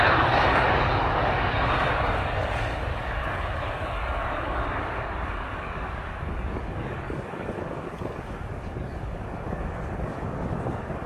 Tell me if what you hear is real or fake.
fake